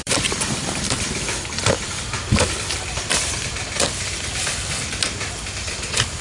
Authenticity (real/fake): fake